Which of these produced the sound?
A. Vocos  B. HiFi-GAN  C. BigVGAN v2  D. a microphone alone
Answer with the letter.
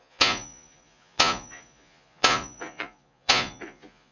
A